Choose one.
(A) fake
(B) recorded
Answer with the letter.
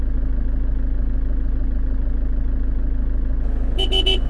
B